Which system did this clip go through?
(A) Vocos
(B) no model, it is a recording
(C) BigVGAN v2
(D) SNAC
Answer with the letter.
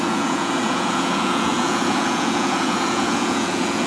A